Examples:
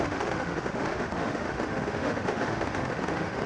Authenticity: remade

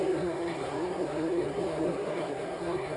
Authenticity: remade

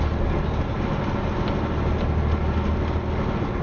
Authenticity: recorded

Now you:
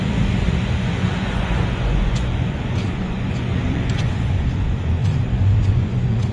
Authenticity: remade